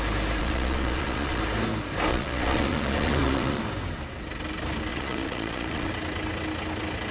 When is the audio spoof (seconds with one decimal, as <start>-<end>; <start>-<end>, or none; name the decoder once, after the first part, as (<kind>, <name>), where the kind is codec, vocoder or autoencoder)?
0.4-1.4 (vocoder, Vocos); 2.1-3.6; 4.9-5.9